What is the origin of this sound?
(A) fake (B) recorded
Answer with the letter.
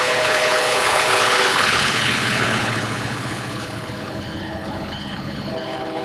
A